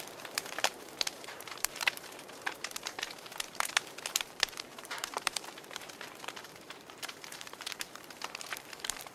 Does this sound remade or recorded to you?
remade